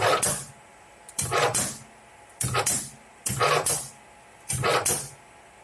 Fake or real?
real